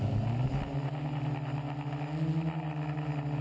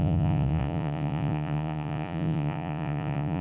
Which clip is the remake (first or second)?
second